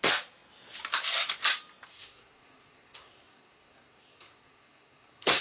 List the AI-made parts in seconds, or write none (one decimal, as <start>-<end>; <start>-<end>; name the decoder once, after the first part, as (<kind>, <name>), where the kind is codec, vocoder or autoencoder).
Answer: 1.9-5.4 (codec, SNAC)